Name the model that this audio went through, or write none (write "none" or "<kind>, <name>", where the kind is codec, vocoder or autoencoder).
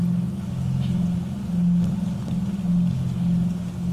none